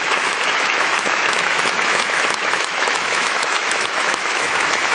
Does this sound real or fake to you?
fake